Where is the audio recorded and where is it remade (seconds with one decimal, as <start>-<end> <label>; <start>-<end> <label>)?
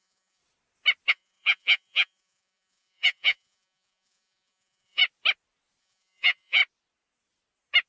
0.0-0.4 remade; 0.4-1.1 recorded; 1.1-5.0 remade; 5.0-5.8 recorded; 5.8-6.6 remade; 6.6-7.9 recorded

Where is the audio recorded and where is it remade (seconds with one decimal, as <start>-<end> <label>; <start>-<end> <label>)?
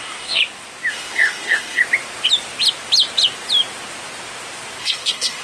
0.0-0.4 remade; 0.4-0.9 recorded; 0.9-1.8 remade; 1.8-4.8 recorded; 4.8-5.4 remade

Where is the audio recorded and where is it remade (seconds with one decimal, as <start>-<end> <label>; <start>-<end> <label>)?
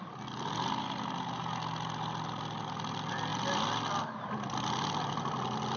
0.0-5.8 recorded